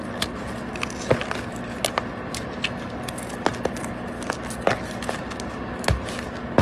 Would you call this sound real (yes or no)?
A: yes